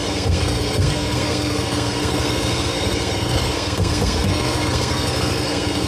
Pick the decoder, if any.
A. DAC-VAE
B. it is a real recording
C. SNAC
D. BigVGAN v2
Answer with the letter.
C